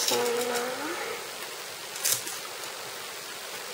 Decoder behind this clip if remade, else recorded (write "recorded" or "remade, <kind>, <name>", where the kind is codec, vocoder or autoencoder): recorded